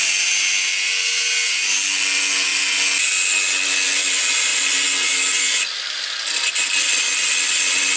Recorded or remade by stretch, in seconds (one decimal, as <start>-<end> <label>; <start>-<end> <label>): 0.0-8.0 recorded